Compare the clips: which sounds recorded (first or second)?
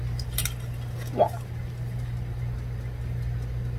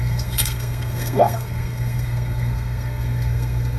first